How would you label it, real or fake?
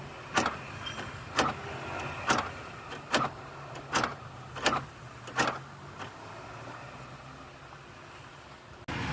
real